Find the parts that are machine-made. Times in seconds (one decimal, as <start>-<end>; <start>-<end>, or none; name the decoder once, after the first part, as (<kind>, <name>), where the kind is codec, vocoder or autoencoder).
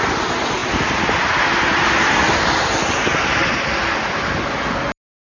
none